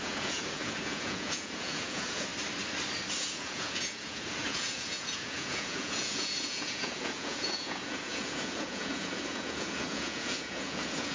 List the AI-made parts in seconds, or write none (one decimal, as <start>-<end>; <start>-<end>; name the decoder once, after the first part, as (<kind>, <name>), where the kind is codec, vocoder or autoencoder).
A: 0.0-2.3 (vocoder, Vocos); 3.2-11.1